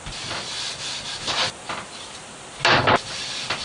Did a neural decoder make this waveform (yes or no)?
no